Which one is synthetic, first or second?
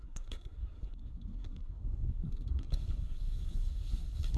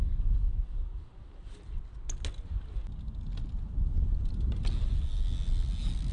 first